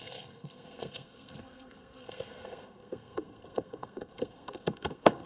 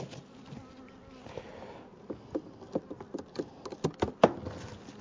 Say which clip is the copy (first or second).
first